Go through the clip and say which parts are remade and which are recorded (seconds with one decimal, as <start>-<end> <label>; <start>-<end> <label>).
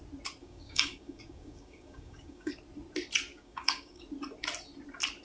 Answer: 0.0-0.4 recorded; 0.4-2.5 remade; 2.5-3.3 recorded; 3.3-4.0 remade; 4.0-5.2 recorded